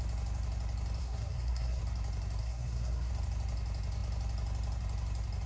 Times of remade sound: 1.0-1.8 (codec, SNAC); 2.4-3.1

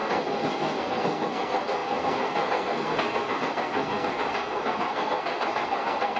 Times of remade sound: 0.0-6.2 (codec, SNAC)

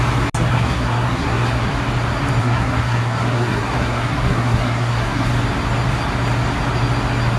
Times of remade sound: 0.5-1.7 (codec, SNAC); 2.4-5.3

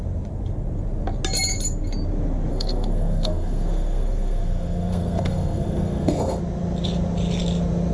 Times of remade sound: 2.5-6.4 (codec, SNAC)

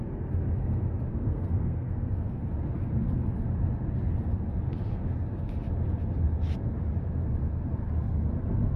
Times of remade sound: 1.1-2.4 (codec, SNAC)

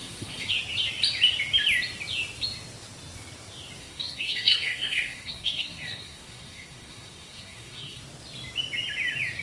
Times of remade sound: 0.0-0.5 (codec, SNAC); 3.8-8.0